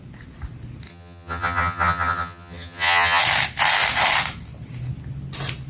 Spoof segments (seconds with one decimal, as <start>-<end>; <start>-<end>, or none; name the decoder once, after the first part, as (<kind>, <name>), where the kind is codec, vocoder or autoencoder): 0.9-3.2 (vocoder, HiFi-GAN)